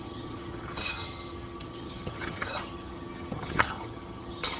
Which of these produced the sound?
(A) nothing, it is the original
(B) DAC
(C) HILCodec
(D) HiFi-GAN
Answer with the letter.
D